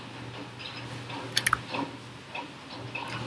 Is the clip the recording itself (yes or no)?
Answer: yes